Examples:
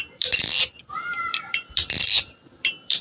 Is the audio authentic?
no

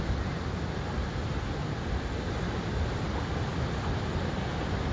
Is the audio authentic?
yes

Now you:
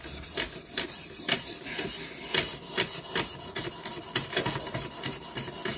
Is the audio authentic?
yes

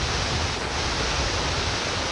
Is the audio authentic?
yes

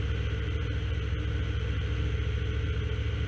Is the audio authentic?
yes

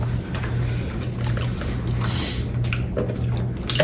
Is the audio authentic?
yes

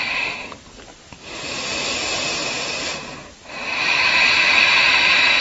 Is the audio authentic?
no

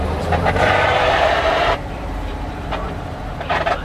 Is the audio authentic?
no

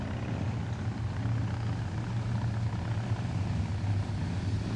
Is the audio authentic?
yes